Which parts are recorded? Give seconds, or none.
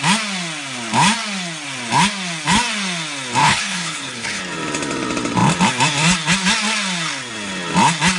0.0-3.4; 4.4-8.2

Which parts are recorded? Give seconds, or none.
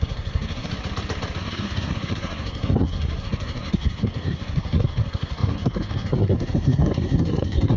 0.7-1.4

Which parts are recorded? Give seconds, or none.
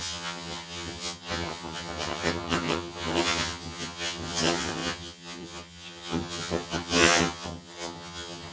none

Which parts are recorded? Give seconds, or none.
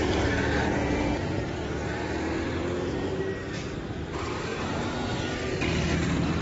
0.0-6.4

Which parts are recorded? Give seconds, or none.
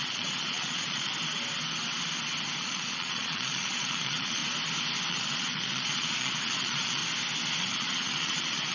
1.1-2.6; 4.4-5.1; 7.0-7.6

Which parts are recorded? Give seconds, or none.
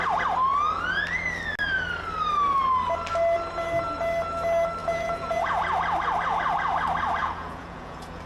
0.0-4.8; 5.5-7.2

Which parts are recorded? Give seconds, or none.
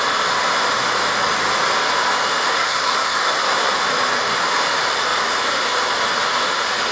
0.0-2.5; 3.8-6.9